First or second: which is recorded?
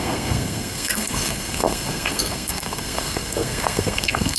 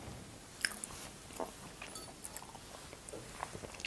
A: second